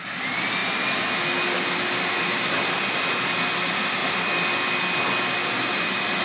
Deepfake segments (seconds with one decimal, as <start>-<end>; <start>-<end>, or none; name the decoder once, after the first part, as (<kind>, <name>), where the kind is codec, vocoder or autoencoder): none